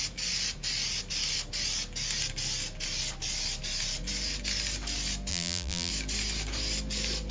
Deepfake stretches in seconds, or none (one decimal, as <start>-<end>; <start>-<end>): 5.3-5.9